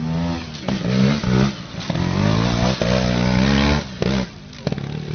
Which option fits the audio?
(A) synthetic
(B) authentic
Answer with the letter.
B